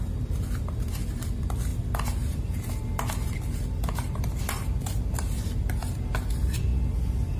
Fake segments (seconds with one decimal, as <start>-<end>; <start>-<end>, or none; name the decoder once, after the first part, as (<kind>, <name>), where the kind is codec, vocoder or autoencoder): 0.0-6.7 (vocoder, BigVGAN v2)